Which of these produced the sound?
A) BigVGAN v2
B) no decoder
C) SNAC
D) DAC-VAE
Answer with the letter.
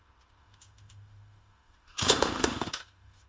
D